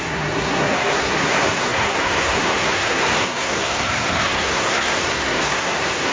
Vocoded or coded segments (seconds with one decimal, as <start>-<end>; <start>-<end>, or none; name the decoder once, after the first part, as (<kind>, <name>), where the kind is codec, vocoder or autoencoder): 0.0-6.1 (codec, SNAC)